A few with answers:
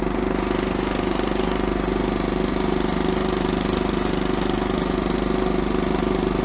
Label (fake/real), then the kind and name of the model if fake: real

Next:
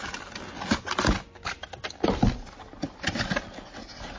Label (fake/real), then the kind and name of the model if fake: real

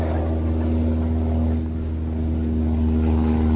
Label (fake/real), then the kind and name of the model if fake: real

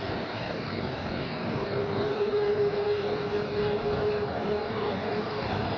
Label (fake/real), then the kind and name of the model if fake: fake, codec, DAC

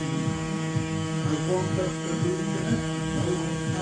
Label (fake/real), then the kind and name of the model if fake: fake, codec, DAC